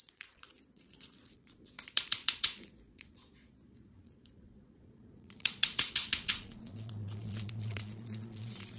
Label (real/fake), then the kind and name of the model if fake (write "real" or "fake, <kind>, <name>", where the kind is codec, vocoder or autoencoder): fake, vocoder, Vocos